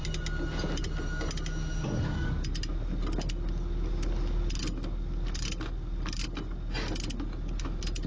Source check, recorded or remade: recorded